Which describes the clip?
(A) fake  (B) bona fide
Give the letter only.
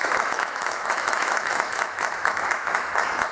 A